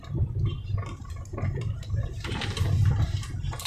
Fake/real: fake